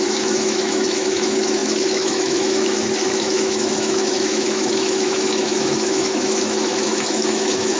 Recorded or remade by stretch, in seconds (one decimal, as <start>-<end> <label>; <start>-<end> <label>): 0.0-7.8 remade